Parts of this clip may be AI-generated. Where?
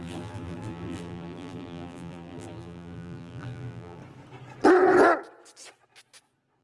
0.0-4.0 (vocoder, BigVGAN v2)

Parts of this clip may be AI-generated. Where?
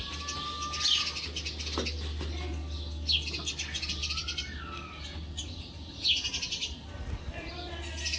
4.0-4.6 (vocoder, BigVGAN v2)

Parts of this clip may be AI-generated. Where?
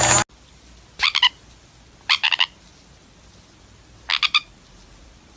none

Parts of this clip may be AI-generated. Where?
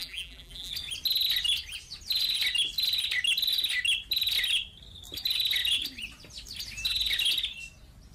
0.0-0.7 (vocoder, BigVGAN v2)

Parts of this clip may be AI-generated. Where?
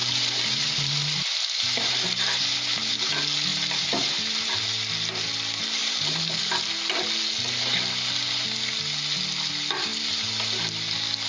0.0-3.1 (vocoder, BigVGAN v2); 3.5-4.5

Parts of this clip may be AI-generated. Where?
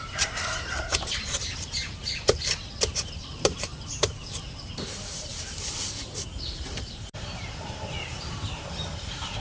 0.0-9.4 (vocoder, BigVGAN v2)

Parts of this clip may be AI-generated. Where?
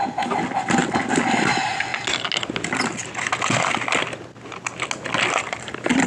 0.0-0.8 (vocoder, BigVGAN v2); 1.4-1.9; 5.4-6.1